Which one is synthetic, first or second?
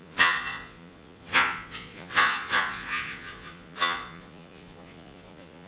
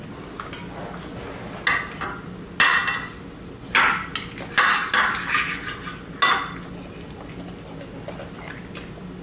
first